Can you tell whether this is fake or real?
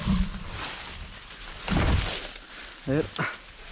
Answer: real